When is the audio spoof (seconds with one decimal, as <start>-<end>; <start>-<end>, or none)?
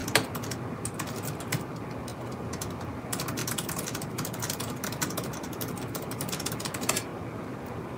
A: none